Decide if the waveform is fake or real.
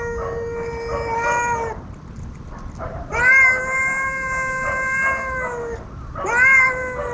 real